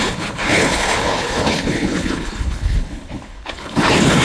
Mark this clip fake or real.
fake